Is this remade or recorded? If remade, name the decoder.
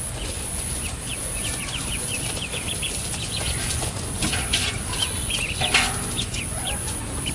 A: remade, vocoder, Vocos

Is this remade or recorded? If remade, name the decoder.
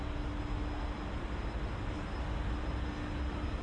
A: recorded